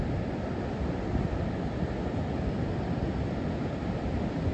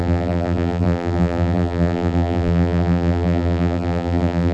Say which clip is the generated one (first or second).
second